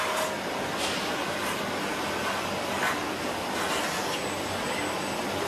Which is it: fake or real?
real